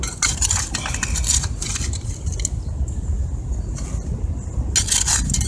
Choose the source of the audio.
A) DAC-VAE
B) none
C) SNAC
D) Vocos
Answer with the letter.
B